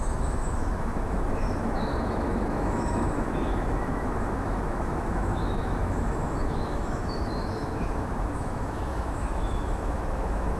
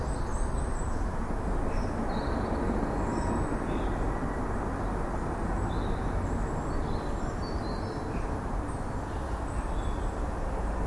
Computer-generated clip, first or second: first